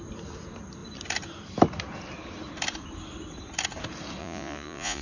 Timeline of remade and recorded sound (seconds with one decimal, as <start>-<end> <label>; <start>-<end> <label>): 0.0-4.2 recorded; 4.2-5.0 remade